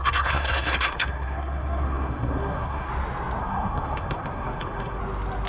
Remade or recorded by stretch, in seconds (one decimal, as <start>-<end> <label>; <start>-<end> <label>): 0.0-2.9 remade; 2.9-3.4 recorded; 3.4-5.0 remade; 5.0-5.5 recorded